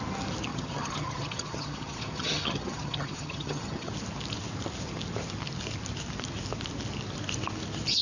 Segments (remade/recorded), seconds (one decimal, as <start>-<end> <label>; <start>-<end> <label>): 0.0-0.5 recorded; 0.5-3.9 remade; 3.9-8.0 recorded